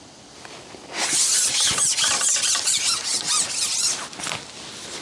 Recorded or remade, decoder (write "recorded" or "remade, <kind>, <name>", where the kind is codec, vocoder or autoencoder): recorded